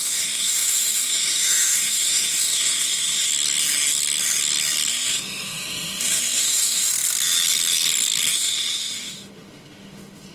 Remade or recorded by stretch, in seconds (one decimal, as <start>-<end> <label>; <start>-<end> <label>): 0.0-3.3 remade; 3.3-4.9 recorded; 4.9-6.9 remade; 6.9-8.3 recorded; 8.3-10.3 remade